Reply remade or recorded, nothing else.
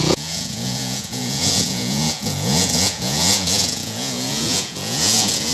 remade